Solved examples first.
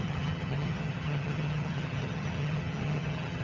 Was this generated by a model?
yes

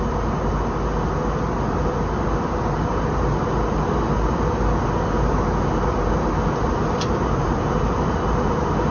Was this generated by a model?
no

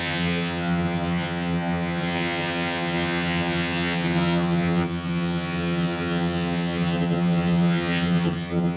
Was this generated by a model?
yes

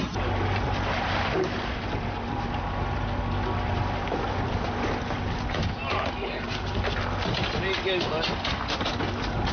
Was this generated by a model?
no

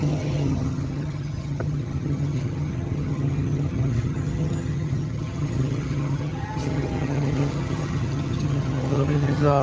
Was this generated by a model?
yes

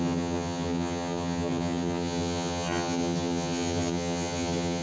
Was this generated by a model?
yes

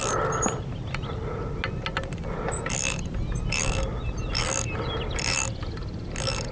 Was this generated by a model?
no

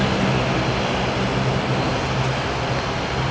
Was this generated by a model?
no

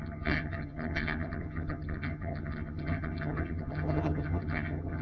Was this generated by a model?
yes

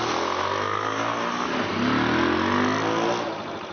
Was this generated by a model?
no